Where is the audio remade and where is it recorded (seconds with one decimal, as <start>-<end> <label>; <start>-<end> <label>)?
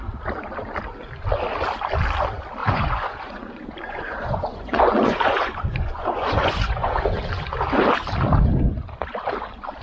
0.0-2.6 recorded; 2.6-7.0 remade; 7.0-9.8 recorded